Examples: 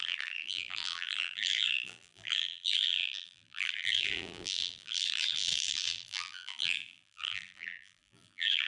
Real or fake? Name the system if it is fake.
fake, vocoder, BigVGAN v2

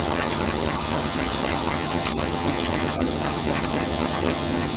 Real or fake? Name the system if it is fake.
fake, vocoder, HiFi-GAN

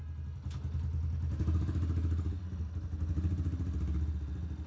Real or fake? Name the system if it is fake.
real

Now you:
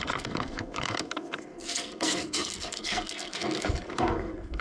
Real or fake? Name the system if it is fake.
fake, codec, SNAC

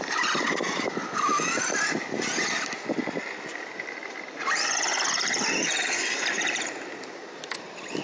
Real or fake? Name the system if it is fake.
fake, vocoder, BigVGAN v2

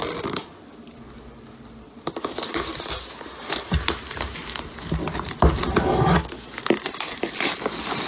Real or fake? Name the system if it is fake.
real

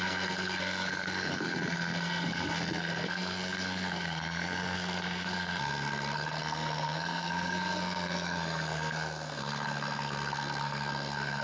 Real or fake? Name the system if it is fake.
fake, codec, SNAC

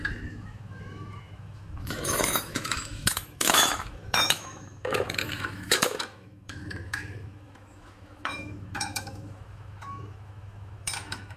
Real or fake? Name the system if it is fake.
fake, autoencoder, DAC-VAE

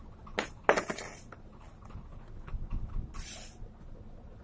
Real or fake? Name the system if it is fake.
real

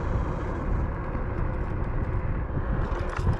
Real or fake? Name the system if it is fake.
real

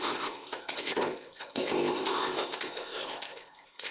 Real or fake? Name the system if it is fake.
fake, codec, ZipCodec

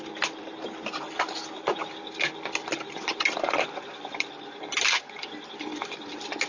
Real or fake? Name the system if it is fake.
fake, vocoder, BigVGAN v2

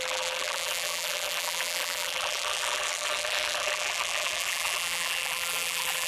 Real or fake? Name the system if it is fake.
fake, vocoder, BigVGAN v2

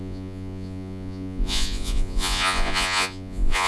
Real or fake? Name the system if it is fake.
fake, vocoder, Vocos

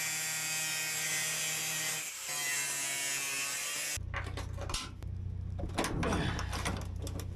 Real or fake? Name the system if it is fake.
real